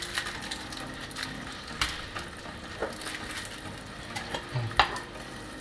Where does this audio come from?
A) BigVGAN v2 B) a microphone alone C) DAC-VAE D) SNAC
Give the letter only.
B